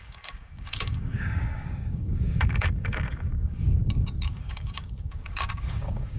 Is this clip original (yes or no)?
no